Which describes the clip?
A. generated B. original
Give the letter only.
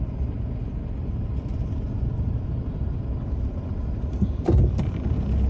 B